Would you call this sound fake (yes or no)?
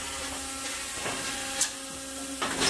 no